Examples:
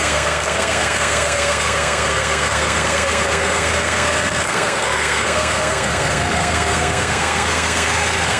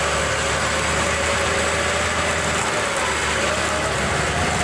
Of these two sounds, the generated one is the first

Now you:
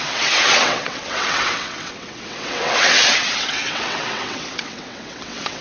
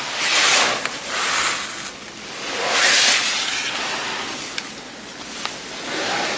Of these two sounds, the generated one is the first